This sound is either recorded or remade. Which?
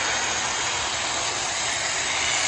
recorded